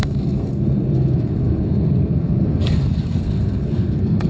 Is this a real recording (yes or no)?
no